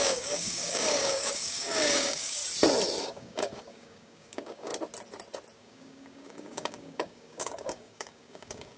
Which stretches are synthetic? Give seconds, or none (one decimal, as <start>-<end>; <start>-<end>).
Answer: 0.0-2.4; 3.0-4.7; 5.6-8.8